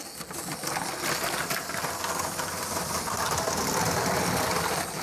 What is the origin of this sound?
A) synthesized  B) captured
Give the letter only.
B